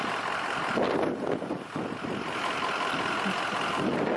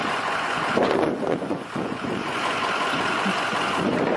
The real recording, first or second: first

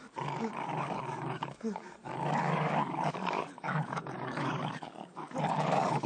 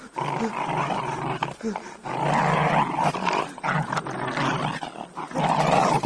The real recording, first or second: second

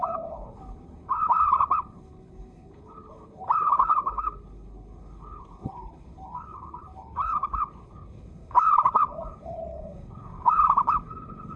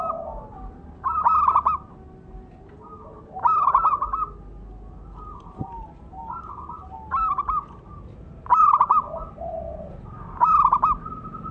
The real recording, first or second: second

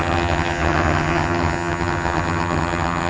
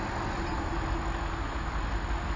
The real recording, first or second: second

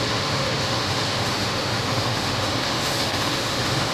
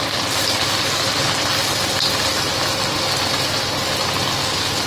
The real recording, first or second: second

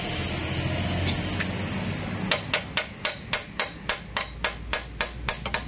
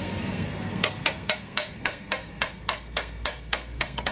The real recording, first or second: first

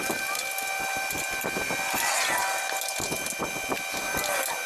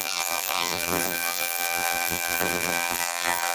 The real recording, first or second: first